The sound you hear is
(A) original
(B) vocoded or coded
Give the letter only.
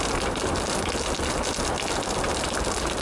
A